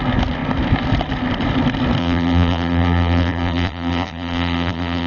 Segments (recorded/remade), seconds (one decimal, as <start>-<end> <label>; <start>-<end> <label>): 0.0-2.0 recorded; 2.0-5.1 remade